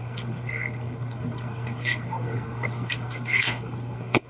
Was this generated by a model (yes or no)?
yes